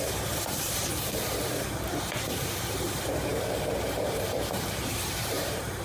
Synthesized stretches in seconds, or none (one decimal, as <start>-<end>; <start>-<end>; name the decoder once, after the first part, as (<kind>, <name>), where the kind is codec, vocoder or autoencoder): 0.0-5.8 (vocoder, BigVGAN v2)

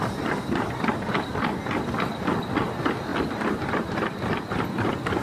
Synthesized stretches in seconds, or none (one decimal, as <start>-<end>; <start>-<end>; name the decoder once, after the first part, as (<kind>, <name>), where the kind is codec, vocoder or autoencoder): none

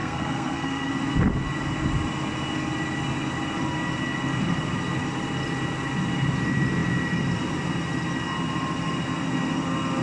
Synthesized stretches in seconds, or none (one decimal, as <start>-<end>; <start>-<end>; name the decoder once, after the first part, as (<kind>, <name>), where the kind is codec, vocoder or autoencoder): 0.0-0.9 (codec, SNAC)

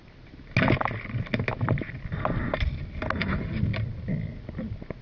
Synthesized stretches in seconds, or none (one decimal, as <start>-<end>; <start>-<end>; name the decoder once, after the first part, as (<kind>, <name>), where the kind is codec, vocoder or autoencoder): none

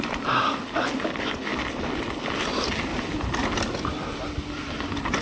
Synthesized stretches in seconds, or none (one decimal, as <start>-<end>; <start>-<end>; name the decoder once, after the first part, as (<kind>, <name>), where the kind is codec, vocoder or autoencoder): 2.9-3.4 (vocoder, BigVGAN v2)

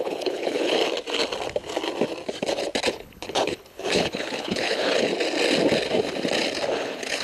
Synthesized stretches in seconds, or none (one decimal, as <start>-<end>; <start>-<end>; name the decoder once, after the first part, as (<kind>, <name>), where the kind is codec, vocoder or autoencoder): 0.0-0.8 (codec, HILCodec); 2.9-5.1; 6.8-7.2